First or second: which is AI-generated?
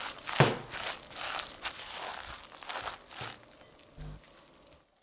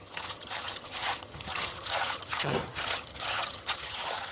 second